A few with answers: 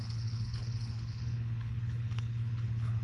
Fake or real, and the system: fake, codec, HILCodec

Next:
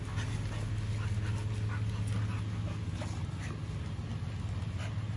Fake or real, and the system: real